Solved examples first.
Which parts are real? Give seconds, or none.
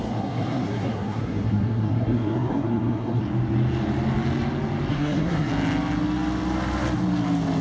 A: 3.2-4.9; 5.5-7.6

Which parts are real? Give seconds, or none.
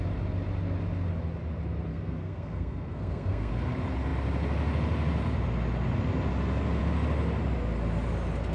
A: 0.0-1.9; 3.5-8.5